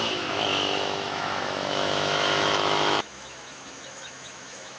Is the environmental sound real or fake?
fake